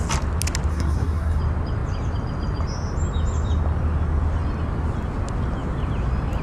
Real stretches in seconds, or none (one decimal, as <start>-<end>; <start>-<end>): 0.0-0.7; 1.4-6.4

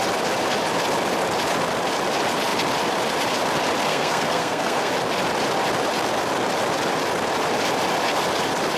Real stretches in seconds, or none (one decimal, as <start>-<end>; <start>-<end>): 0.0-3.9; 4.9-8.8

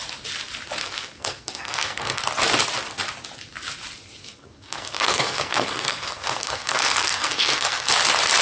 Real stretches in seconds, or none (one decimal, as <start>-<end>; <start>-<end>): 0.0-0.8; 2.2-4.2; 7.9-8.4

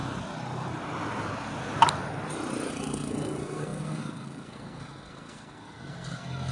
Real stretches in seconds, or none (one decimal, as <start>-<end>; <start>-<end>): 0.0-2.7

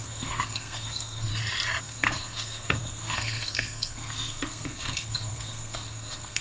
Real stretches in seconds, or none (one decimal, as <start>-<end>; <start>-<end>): 1.3-1.8

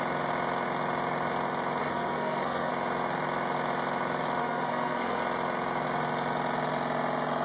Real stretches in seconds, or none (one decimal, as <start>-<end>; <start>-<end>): 0.0-1.8; 2.7-4.4; 5.2-7.4